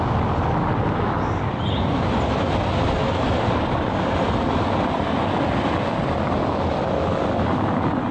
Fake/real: real